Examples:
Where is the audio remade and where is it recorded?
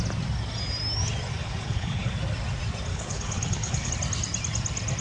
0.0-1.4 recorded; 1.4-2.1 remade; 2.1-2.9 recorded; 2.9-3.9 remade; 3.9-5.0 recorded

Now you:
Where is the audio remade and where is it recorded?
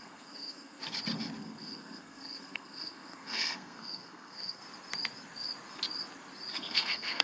0.0-0.8 remade; 0.8-1.4 recorded; 1.4-4.6 remade; 4.6-6.5 recorded; 6.5-7.2 remade